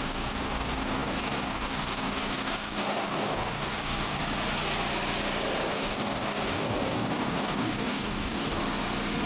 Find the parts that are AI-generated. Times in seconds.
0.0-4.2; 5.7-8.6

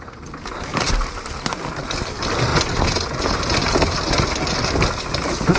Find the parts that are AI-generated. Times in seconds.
none

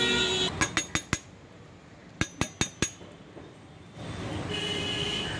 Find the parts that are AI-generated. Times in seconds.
none